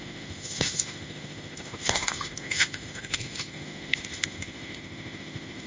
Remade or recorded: remade